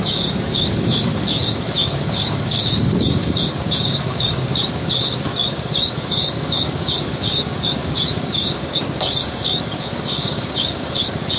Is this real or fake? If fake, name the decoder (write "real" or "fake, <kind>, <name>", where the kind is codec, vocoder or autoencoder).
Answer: fake, codec, DAC